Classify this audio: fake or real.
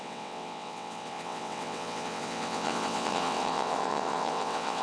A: fake